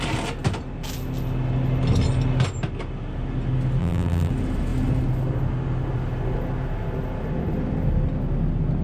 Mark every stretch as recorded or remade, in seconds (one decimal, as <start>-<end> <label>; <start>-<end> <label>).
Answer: 0.0-3.8 recorded; 3.8-4.3 remade; 4.3-8.8 recorded